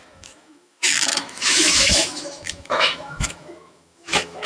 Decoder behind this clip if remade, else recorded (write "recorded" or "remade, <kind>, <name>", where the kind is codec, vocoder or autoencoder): remade, autoencoder, DAC-VAE